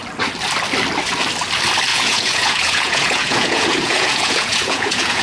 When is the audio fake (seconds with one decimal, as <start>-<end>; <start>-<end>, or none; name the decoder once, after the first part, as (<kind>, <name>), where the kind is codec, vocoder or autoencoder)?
1.9-5.2 (vocoder, Vocos)